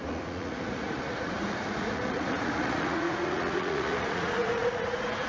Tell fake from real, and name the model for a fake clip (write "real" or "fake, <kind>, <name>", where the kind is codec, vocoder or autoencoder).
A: fake, vocoder, Vocos